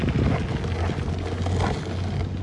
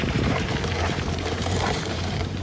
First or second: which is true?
first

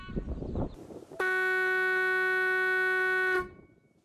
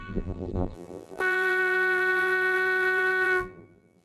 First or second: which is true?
first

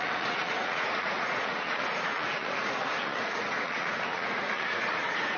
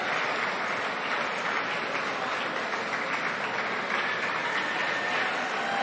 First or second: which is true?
second